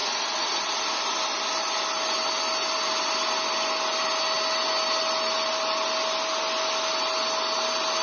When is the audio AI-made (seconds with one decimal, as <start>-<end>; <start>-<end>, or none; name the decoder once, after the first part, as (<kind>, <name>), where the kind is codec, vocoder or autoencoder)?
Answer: 0.0-0.5 (vocoder, Vocos)